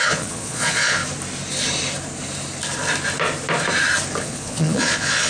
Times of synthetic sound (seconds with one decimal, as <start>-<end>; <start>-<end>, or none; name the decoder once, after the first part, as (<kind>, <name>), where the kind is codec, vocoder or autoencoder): 0.0-1.0 (vocoder, Vocos); 4.2-5.3